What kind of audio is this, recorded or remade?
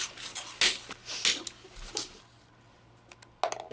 recorded